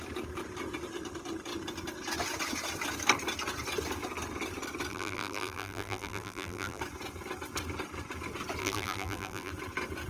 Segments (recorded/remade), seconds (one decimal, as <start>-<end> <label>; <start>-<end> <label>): 0.0-4.9 recorded; 4.9-6.8 remade; 6.8-8.6 recorded; 8.6-9.5 remade; 9.5-10.1 recorded